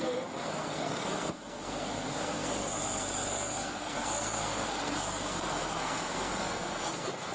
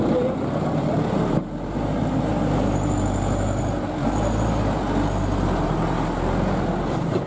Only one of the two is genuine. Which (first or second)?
second